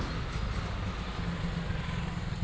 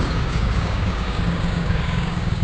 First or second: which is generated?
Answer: second